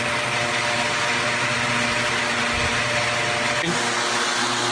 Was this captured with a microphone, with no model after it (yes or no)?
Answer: yes